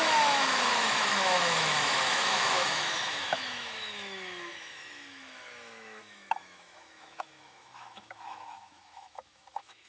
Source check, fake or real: fake